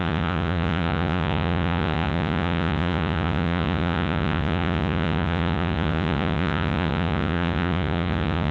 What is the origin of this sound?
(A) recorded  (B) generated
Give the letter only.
B